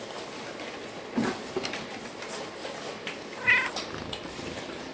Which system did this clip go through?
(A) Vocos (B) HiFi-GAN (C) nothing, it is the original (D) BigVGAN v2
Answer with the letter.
C